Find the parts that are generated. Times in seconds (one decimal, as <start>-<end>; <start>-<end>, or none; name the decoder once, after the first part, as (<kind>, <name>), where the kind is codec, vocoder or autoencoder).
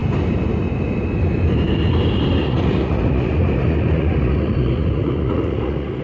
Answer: 2.4-6.0 (vocoder, Vocos)